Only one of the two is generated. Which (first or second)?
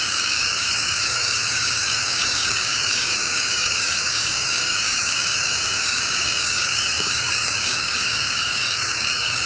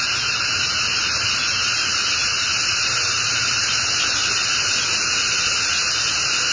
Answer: first